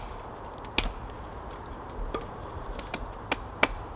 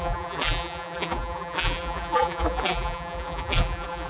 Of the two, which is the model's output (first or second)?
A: second